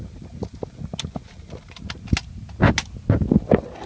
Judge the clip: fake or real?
real